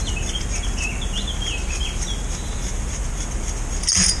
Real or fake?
real